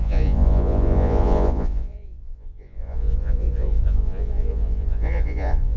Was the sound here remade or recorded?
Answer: remade